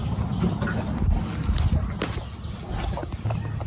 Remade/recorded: recorded